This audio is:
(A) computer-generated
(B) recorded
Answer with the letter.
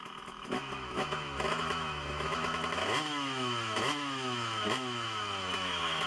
A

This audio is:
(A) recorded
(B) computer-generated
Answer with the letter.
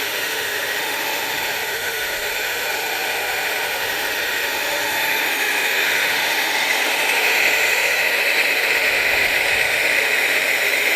B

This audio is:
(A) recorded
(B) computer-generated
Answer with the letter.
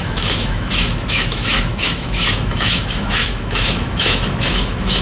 B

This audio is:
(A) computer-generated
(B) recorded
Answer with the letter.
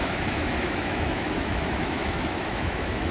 A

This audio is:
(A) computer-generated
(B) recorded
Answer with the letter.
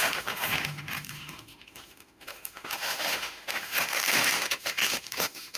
A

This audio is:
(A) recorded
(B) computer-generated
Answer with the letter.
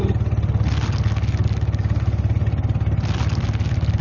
A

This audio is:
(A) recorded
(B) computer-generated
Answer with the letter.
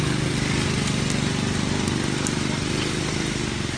A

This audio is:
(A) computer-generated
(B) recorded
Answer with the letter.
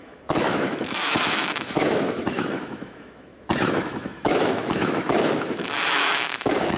A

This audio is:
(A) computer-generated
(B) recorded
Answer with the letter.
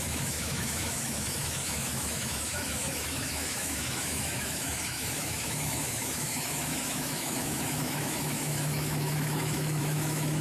A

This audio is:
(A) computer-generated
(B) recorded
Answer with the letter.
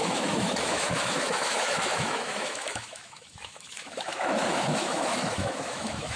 A